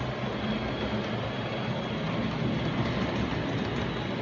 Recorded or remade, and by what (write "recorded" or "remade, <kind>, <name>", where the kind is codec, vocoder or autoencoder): recorded